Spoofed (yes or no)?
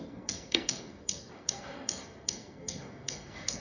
yes